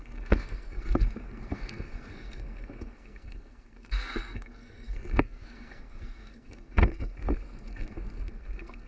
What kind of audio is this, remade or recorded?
remade